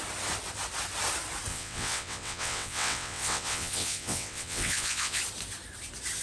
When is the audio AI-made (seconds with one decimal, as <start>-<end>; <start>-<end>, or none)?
1.5-5.2